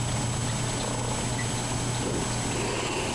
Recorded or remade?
recorded